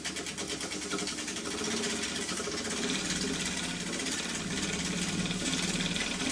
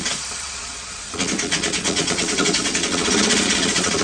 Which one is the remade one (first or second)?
second